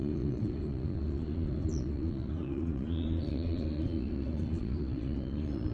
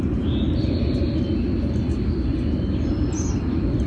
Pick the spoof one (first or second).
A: first